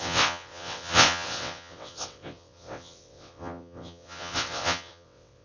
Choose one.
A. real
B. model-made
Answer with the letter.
B